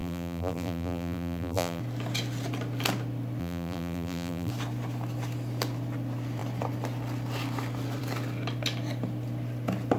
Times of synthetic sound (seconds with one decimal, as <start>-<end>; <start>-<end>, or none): 0.0-1.8; 3.4-4.5